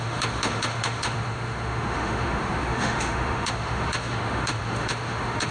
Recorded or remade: remade